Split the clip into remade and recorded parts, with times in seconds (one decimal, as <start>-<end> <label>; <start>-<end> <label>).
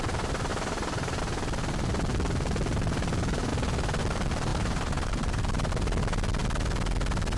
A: 0.0-0.5 recorded; 0.5-1.2 remade; 1.2-4.5 recorded; 4.5-5.7 remade; 5.7-7.4 recorded